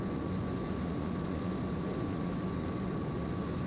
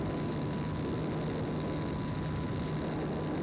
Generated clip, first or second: first